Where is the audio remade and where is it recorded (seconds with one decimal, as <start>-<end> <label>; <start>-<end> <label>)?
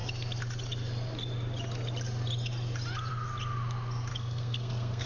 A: 0.0-4.1 recorded; 4.1-5.1 remade